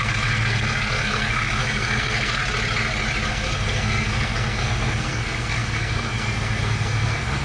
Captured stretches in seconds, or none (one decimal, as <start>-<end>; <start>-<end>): 2.4-3.3